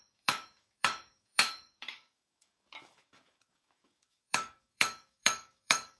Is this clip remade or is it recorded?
remade